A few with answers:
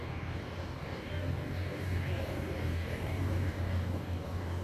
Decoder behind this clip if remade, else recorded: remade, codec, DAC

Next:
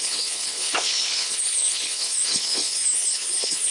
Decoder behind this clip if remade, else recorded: remade, codec, HILCodec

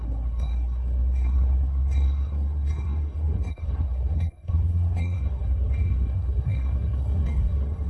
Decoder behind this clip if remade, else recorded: remade, codec, SNAC